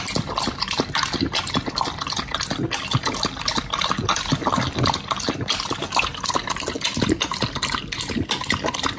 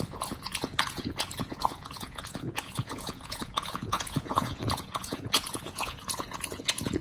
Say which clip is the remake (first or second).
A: second